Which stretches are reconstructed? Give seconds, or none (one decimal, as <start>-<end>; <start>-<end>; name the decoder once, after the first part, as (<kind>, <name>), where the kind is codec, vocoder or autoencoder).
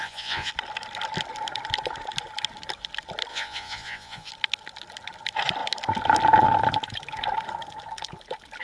0.0-0.5 (vocoder, Vocos); 3.3-4.3